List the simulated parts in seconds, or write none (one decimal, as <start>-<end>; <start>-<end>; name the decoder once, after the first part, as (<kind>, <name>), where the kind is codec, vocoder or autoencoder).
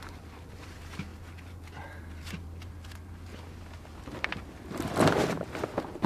0.0-1.1 (vocoder, BigVGAN v2); 3.8-6.1